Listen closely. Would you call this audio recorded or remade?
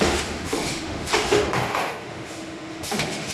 remade